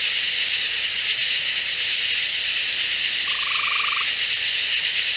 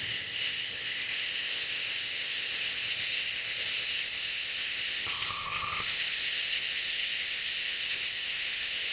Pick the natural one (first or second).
first